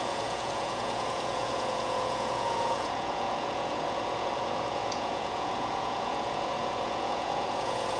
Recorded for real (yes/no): no